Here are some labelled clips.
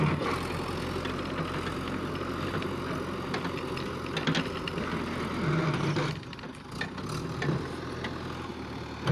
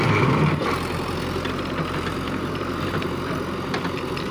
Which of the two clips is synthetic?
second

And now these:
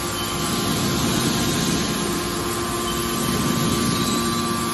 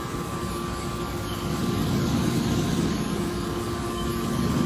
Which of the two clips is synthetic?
second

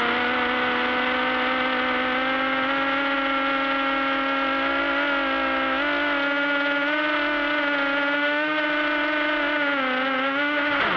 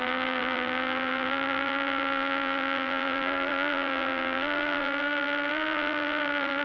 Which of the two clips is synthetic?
second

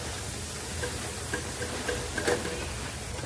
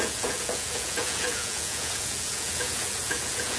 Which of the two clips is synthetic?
second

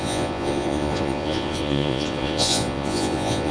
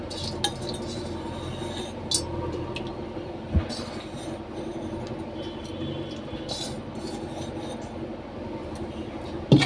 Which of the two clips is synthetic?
first